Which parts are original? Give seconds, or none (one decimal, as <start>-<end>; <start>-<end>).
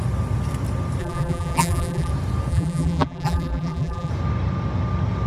0.0-1.0; 2.1-2.5; 4.1-5.3